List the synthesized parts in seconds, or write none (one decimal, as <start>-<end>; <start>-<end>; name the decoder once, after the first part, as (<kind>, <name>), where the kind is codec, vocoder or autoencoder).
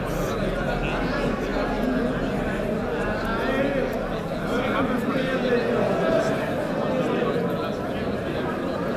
none